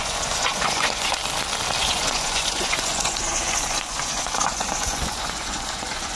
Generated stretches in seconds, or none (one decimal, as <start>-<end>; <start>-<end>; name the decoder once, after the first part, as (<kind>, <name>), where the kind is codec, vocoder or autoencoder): 0.0-1.2 (vocoder, Vocos); 1.8-6.2